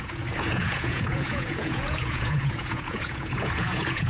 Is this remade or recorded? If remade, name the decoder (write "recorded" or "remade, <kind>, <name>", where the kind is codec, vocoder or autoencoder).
remade, vocoder, Vocos